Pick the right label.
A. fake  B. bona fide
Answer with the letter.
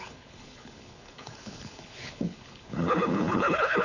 A